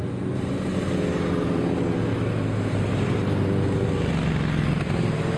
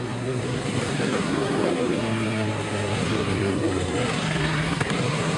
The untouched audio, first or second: first